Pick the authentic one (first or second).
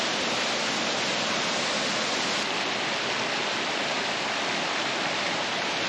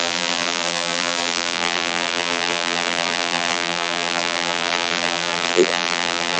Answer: first